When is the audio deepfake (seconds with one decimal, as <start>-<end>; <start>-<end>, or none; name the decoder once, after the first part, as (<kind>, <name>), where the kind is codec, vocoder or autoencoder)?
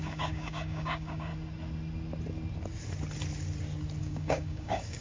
0.0-1.3 (codec, DAC); 4.0-5.0